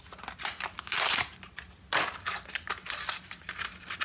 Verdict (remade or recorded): recorded